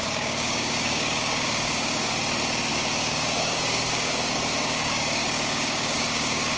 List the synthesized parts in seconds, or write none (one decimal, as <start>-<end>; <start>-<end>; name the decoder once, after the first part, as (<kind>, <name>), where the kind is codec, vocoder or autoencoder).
0.0-2.1 (codec, DAC); 2.7-6.6